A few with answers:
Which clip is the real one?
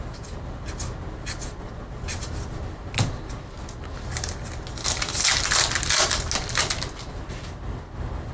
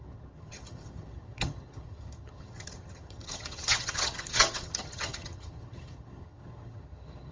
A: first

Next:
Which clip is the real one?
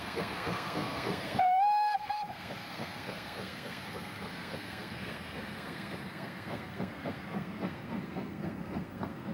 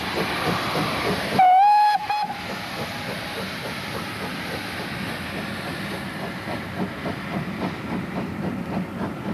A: second